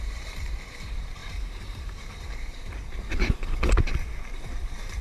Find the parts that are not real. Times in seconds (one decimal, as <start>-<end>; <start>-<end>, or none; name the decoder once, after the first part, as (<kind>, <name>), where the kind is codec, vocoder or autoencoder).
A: 0.0-5.0 (vocoder, BigVGAN v2)